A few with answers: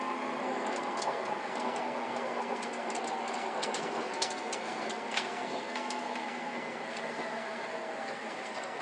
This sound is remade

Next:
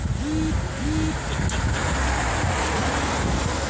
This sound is recorded